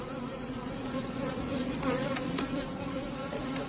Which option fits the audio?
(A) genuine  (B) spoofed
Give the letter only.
B